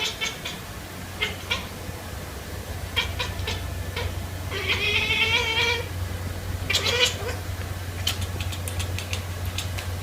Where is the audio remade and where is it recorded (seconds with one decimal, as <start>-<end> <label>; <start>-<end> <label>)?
0.0-10.0 recorded